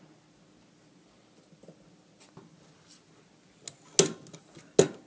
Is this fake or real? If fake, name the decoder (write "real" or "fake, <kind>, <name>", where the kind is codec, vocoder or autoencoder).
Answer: real